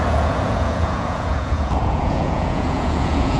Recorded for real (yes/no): no